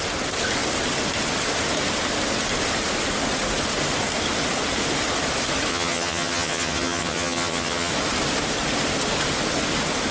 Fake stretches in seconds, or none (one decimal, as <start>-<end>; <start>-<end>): 5.7-7.9